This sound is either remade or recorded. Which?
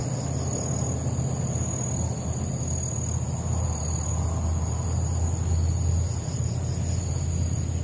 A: recorded